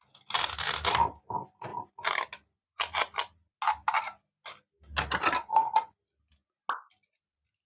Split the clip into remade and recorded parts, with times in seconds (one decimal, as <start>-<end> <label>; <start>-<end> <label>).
0.0-7.7 recorded